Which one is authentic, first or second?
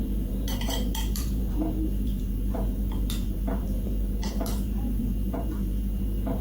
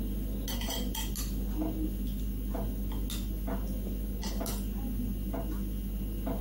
second